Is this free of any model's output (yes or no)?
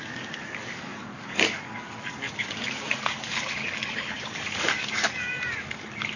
no